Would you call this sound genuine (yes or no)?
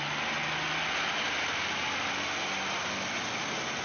yes